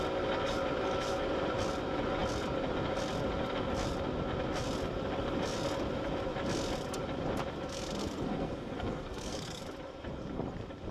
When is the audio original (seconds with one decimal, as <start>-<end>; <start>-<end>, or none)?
0.0-8.0; 9.6-10.9

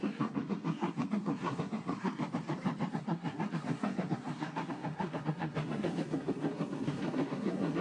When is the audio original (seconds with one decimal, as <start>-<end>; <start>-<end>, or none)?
2.2-2.9

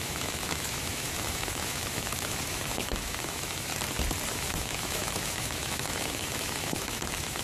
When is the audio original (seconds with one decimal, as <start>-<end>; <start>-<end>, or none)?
3.7-4.3

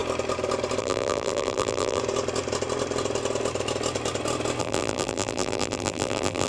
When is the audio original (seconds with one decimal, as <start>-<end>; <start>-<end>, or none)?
0.0-0.8; 2.0-4.6

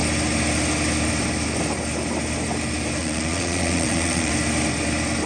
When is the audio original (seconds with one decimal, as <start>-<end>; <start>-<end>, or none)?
0.0-3.0; 4.3-5.3

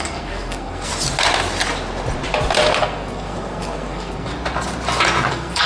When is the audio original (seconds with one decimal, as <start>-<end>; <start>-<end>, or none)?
0.9-2.8; 4.3-5.3

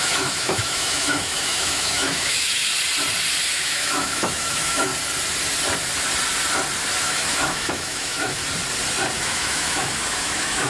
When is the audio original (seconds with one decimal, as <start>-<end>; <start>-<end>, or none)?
2.7-3.5; 4.9-7.0; 8.4-9.2